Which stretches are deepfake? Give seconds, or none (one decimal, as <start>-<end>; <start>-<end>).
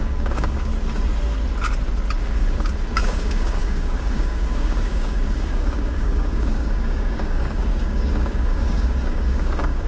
0.0-0.7; 2.2-9.9